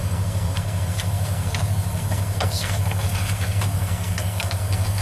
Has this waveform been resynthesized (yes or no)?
yes